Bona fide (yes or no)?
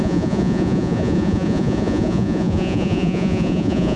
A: no